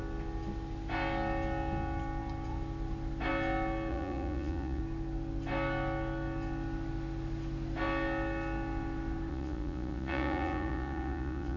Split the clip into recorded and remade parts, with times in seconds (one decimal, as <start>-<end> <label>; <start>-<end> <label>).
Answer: 0.0-3.9 recorded; 3.9-4.8 remade; 4.8-9.3 recorded; 9.3-11.6 remade